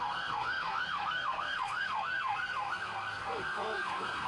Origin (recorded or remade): remade